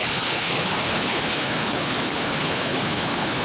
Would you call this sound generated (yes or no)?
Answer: yes